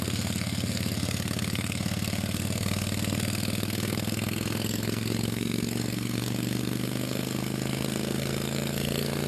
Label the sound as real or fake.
fake